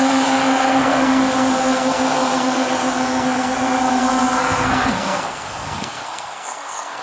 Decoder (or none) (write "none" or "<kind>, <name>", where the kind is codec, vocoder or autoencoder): codec, SNAC